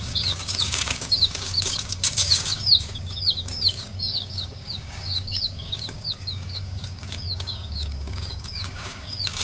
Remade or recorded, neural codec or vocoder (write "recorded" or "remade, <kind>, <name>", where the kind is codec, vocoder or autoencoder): remade, codec, DAC